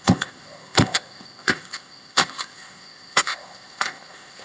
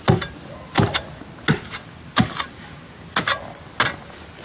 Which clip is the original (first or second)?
second